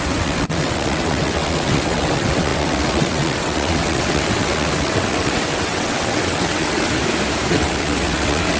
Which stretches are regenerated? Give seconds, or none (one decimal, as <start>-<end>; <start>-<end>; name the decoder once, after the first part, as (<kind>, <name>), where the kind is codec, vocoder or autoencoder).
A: 0.0-6.9 (vocoder, WaveNeXt); 7.5-8.6